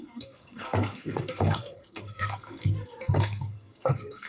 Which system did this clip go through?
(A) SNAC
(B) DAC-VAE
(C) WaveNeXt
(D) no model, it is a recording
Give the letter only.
A